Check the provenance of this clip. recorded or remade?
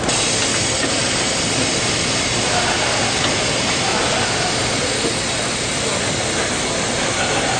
recorded